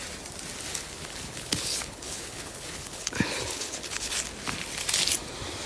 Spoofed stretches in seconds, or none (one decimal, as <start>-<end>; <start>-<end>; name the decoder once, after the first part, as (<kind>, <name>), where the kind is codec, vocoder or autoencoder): 0.7-4.1 (codec, HILCodec)